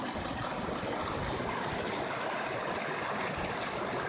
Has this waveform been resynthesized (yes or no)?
no